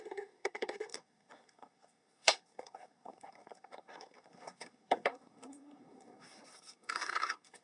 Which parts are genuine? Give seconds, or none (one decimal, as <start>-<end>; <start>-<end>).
none